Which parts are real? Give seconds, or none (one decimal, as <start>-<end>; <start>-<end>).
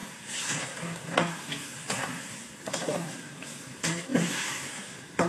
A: none